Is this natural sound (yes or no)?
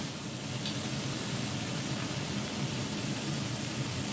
yes